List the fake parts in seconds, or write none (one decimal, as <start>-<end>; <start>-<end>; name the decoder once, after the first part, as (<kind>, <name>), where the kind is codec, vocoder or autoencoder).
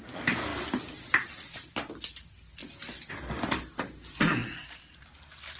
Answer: none